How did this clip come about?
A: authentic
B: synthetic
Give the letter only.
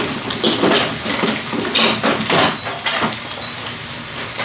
A